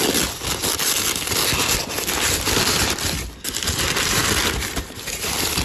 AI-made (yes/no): no